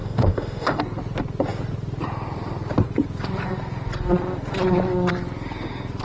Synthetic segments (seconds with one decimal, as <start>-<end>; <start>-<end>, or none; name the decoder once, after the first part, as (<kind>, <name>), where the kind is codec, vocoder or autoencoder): 0.0-0.8 (autoencoder, DAC-VAE)